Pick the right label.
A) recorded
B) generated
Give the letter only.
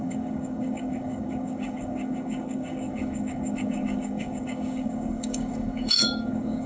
B